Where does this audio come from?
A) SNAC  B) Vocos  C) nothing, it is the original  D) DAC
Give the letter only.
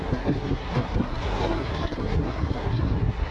A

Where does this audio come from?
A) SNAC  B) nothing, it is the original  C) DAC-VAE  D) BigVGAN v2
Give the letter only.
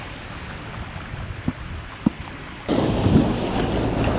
B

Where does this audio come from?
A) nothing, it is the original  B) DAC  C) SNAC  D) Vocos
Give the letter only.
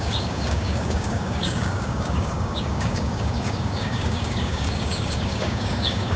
B